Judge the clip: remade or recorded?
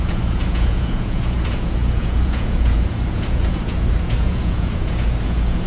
remade